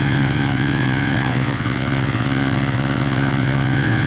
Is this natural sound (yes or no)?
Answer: no